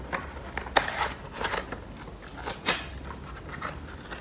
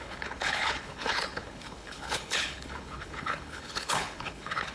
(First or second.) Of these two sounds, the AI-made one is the second